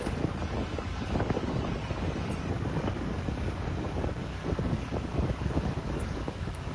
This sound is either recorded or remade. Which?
remade